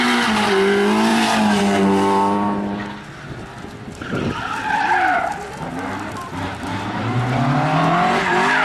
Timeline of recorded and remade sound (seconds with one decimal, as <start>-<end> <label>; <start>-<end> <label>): 0.0-1.1 recorded; 1.1-1.6 remade; 1.6-8.6 recorded